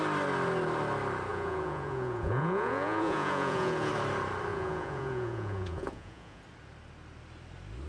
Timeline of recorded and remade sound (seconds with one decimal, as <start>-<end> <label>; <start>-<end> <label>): 0.0-1.3 recorded; 1.3-3.9 remade; 3.9-4.5 recorded; 4.5-6.4 remade; 6.4-7.9 recorded